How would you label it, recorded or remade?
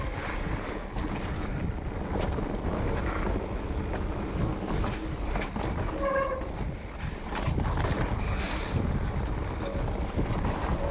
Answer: recorded